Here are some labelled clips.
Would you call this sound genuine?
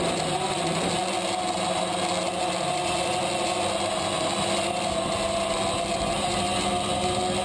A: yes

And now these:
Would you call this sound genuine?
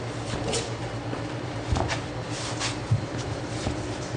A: no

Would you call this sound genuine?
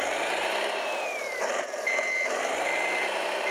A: no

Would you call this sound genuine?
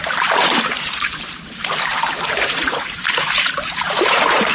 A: no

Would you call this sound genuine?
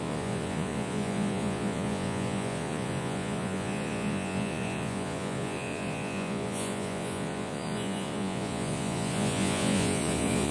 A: no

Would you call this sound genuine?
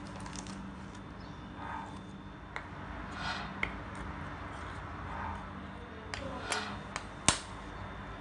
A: yes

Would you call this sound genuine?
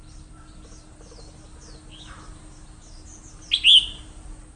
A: yes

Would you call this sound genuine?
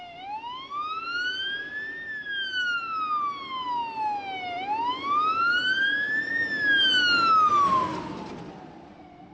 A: yes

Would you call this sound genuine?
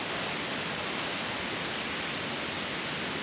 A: yes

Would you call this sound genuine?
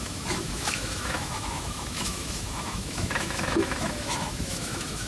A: no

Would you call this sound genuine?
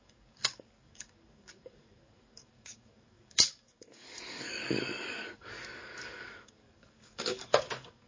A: no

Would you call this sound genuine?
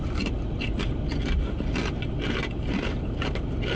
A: yes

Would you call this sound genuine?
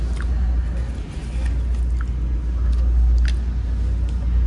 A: yes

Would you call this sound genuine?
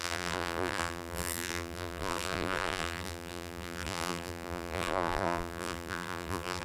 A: no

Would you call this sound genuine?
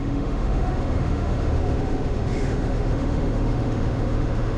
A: no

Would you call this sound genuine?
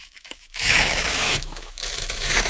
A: no